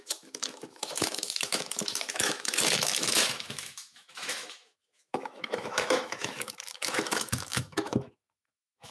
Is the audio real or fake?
fake